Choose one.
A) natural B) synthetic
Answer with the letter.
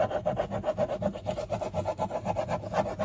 A